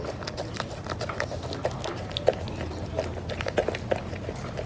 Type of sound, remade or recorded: recorded